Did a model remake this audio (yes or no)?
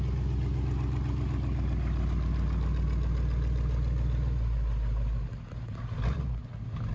no